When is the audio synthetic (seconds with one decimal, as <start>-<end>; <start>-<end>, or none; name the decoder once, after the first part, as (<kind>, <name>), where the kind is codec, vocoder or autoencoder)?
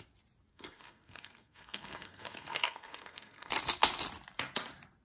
0.5-3.5 (codec, SNAC)